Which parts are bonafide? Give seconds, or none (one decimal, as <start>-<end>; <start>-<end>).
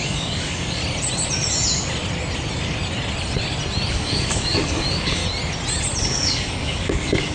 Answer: 0.8-3.9; 5.2-6.0